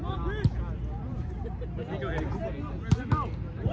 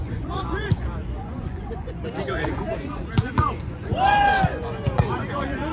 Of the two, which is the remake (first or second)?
second